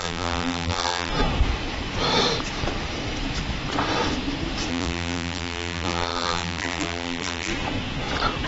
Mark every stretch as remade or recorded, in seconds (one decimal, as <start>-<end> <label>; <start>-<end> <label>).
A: 0.0-1.1 remade; 1.1-4.7 recorded; 4.7-7.5 remade; 7.5-8.5 recorded